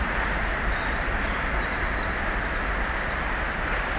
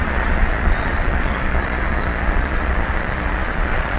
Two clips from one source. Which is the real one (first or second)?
first